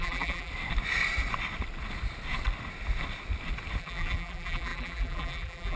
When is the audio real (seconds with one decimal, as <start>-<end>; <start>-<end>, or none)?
0.5-3.8